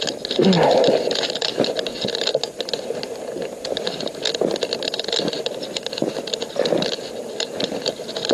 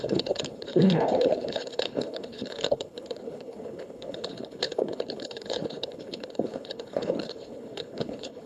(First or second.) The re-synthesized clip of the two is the second